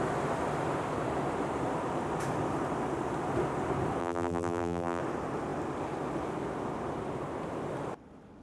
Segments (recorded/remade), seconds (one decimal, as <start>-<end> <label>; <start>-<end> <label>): 0.0-4.0 recorded; 4.0-5.0 remade; 5.0-8.4 recorded